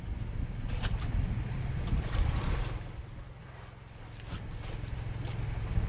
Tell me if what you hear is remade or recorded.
recorded